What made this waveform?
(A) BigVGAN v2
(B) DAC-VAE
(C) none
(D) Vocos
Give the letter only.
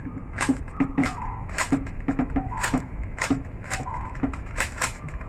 B